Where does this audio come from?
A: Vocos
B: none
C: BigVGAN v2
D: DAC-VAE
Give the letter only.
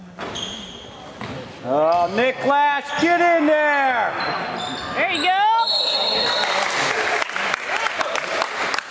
B